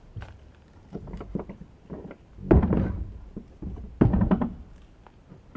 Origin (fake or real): real